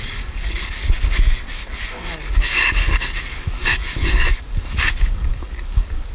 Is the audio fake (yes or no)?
yes